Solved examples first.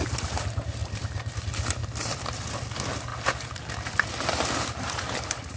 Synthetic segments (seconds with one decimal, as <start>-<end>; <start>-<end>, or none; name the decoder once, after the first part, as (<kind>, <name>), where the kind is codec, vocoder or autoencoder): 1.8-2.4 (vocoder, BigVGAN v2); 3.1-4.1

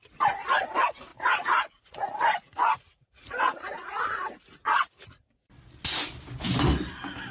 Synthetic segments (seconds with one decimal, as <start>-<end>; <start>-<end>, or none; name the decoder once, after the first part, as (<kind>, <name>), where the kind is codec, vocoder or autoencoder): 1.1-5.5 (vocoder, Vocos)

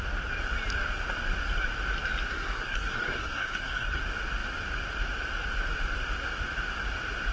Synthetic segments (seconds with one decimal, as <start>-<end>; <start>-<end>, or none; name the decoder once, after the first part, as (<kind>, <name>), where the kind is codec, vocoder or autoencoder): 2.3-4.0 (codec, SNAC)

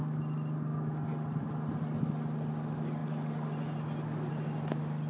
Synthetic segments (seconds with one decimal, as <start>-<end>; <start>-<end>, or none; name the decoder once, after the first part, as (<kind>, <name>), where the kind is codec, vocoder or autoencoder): none